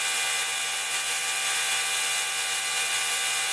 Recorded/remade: recorded